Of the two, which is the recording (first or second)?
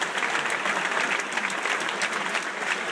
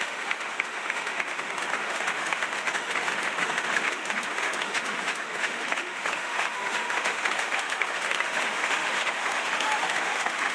first